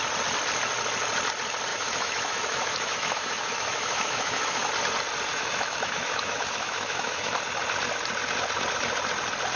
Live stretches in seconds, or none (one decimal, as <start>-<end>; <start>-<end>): 0.0-1.7; 4.7-5.3; 7.3-9.6